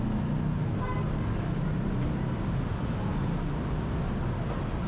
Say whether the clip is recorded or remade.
recorded